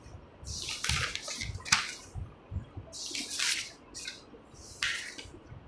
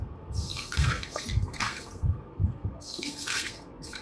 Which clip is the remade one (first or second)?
second